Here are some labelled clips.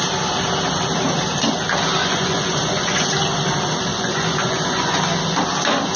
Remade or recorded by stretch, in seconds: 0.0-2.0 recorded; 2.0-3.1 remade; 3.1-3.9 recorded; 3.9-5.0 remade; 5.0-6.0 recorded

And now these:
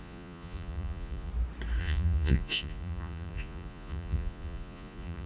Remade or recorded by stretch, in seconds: 0.0-1.3 remade; 1.3-1.8 recorded; 1.8-5.3 remade

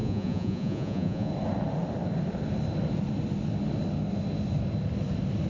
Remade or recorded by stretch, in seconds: 0.0-1.3 remade; 1.3-5.5 recorded

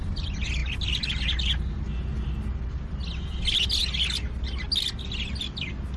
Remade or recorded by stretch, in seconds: 0.0-6.0 recorded